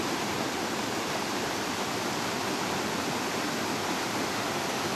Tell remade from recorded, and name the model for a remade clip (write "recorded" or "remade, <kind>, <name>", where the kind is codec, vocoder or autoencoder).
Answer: recorded